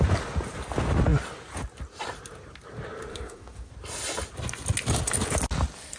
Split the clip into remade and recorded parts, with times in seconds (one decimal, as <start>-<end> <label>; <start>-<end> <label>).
0.0-3.1 recorded; 3.1-3.7 remade; 3.7-6.0 recorded